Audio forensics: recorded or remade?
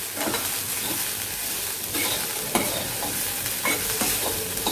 recorded